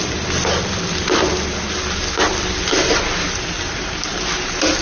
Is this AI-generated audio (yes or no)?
no